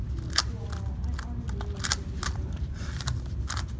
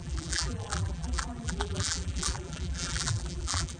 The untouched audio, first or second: first